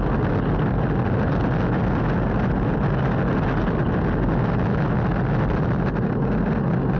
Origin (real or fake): real